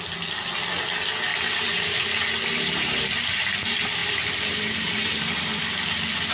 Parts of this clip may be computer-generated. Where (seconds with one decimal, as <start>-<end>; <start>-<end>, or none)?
1.3-1.9; 2.5-3.1; 4.0-5.6